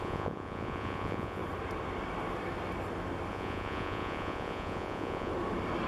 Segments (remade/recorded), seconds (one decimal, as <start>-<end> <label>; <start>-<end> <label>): 0.0-1.4 remade; 1.4-3.3 recorded; 3.3-5.3 remade; 5.3-5.9 recorded